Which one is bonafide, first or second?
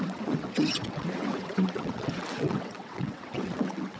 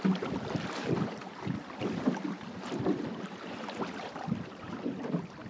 second